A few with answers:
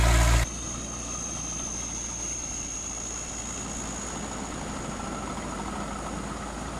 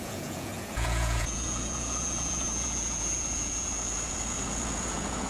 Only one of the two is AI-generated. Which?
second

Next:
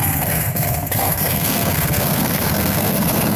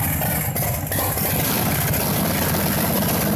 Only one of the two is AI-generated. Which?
first